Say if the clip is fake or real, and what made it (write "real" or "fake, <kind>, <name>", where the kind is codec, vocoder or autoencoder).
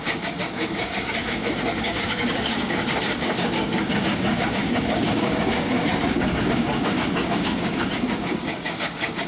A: fake, codec, DAC